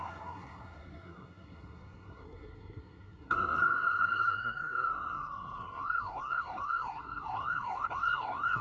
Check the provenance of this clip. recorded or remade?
remade